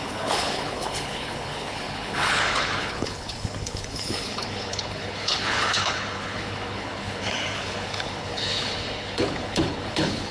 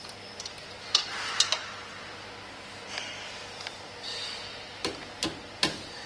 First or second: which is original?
second